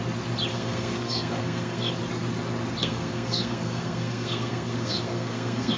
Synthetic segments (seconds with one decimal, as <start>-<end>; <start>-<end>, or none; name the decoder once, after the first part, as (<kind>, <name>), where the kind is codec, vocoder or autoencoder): 0.5-1.9 (codec, SNAC); 2.8-5.8